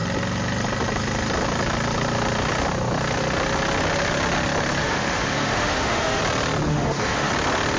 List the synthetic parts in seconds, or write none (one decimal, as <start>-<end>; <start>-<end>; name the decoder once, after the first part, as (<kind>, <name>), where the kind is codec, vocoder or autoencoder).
4.8-6.2 (autoencoder, DAC-VAE); 6.7-7.3